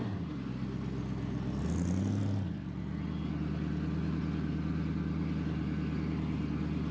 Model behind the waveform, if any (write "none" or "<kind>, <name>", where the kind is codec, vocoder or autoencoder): none